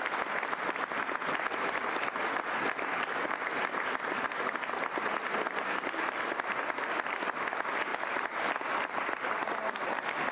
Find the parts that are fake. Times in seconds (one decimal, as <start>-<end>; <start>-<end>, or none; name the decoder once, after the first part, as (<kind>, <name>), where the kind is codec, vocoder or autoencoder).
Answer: 7.9-9.5 (vocoder, BigVGAN v2)